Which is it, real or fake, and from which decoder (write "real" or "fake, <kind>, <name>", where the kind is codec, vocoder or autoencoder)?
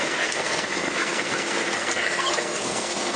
fake, codec, SNAC